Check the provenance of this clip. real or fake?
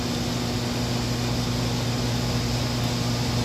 real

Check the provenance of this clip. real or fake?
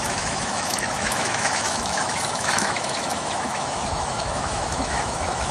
fake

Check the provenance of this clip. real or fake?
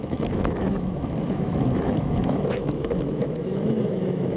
fake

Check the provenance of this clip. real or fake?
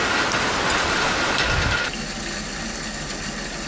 real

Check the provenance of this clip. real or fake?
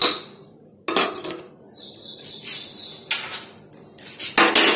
real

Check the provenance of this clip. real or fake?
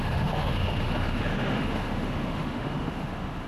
fake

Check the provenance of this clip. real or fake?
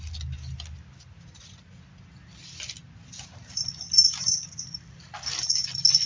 real